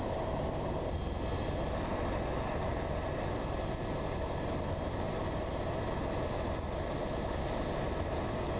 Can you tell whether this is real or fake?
real